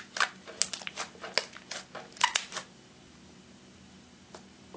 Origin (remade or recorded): recorded